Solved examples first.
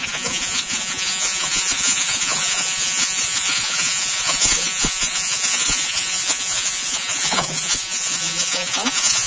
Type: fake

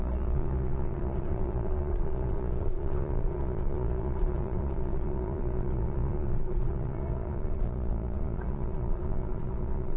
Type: fake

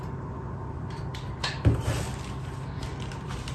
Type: real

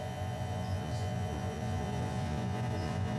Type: fake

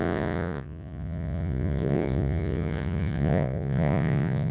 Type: fake